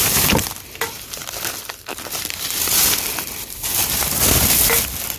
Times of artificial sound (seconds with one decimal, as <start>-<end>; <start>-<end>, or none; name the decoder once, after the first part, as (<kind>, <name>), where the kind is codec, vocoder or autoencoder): 1.2-4.3 (vocoder, BigVGAN v2)